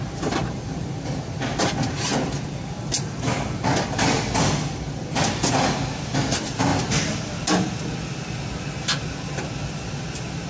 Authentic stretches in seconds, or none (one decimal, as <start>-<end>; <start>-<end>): 0.0-10.5